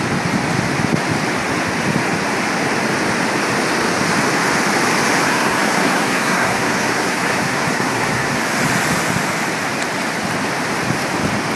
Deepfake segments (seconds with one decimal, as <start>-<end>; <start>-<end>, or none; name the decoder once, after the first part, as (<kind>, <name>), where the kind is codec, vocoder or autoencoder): 5.3-8.4 (codec, SNAC)